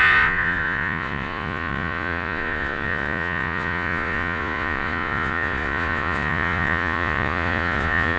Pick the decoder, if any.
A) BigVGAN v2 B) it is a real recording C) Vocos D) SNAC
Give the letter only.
C